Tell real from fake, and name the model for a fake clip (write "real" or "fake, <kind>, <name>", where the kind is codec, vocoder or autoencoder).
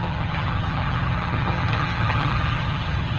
fake, vocoder, HiFi-GAN